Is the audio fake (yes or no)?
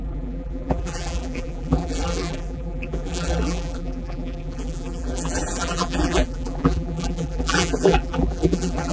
yes